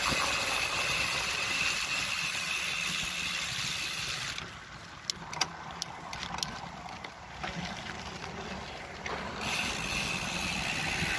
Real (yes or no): yes